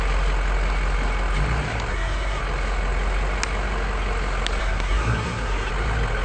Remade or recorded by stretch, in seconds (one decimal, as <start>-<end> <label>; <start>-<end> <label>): 0.0-1.9 recorded; 1.9-2.4 remade; 2.4-4.6 recorded; 4.6-5.7 remade; 5.7-6.2 recorded